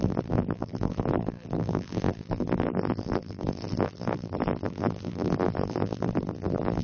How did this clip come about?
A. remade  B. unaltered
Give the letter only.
A